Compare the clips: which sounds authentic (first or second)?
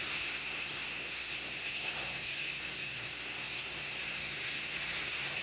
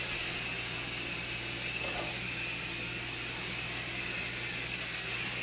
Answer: second